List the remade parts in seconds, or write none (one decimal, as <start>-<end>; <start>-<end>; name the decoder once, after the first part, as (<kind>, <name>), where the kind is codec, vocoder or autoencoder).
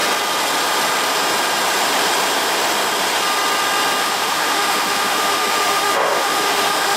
4.0-7.0 (autoencoder, DAC-VAE)